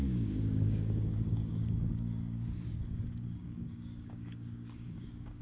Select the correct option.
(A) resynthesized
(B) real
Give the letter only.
A